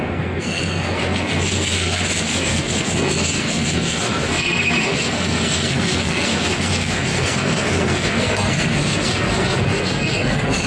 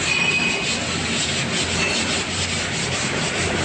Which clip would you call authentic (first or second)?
second